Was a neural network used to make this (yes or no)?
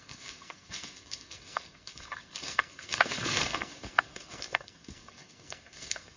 yes